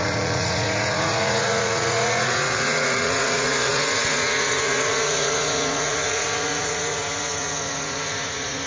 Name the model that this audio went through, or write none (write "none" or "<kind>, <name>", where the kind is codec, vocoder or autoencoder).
vocoder, Vocos